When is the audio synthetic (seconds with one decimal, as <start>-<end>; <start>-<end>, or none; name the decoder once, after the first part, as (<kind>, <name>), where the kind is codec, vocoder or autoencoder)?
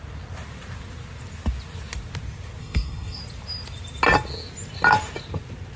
2.6-3.2 (codec, SNAC)